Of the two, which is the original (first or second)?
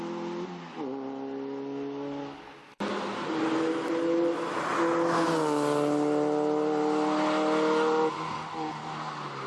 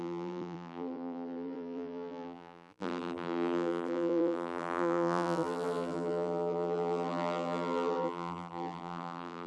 first